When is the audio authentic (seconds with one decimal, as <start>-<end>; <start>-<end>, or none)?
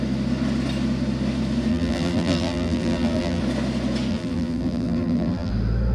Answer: 0.0-1.7; 3.4-4.1; 5.5-5.9